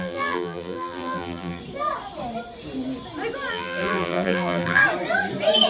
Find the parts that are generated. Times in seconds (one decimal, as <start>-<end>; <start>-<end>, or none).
0.0-1.6; 3.5-4.8